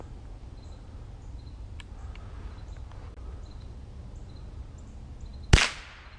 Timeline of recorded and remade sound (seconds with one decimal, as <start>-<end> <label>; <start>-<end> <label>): 0.0-6.2 recorded